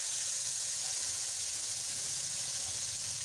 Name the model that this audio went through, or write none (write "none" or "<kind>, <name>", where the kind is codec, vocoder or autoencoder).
vocoder, Vocos